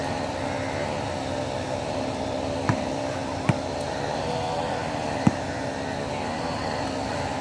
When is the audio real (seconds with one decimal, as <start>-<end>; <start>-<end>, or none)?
0.0-1.8; 4.8-6.4